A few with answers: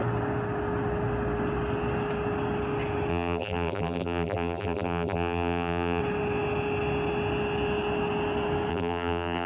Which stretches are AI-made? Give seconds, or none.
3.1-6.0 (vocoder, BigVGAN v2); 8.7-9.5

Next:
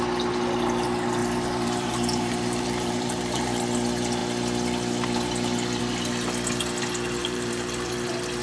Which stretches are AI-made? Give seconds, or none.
1.2-3.6 (vocoder, BigVGAN v2); 7.2-7.9

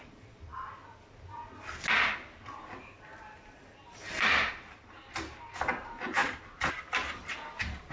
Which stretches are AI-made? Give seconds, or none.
0.0-0.5 (vocoder, BigVGAN v2); 4.0-6.2; 7.3-7.9

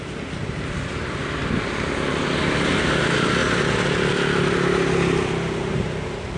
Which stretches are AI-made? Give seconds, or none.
0.0-0.4 (vocoder, BigVGAN v2); 2.7-3.4; 5.7-6.4

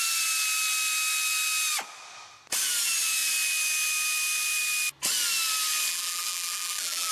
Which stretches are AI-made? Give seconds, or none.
5.9-7.1 (vocoder, BigVGAN v2)

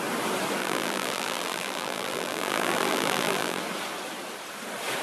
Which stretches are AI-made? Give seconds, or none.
0.6-3.6 (vocoder, BigVGAN v2)